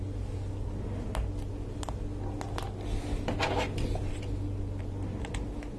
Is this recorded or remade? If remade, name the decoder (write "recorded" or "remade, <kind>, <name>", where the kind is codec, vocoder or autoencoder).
recorded